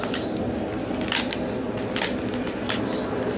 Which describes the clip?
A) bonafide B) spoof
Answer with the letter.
A